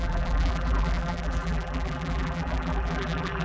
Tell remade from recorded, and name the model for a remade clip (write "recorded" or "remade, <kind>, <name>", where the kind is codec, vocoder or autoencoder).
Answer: remade, vocoder, BigVGAN v2